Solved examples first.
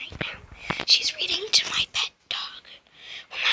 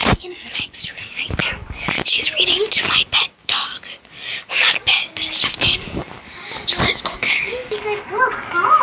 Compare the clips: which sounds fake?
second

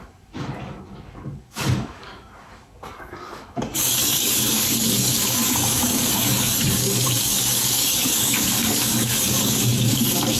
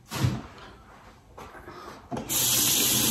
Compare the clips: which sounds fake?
first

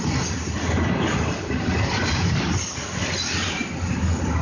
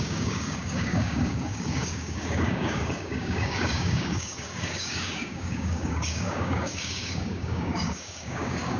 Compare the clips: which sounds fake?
second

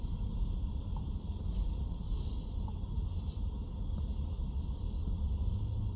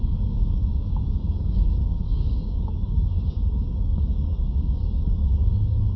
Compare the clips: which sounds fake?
second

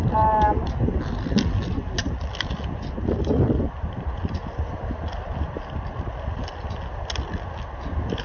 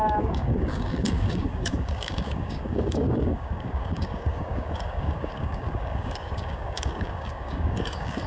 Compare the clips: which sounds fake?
second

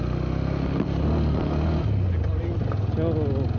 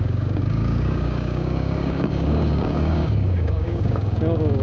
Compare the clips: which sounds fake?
second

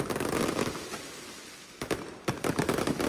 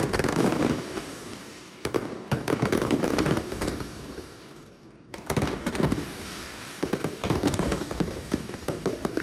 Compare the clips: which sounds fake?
second